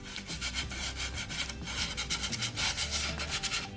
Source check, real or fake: real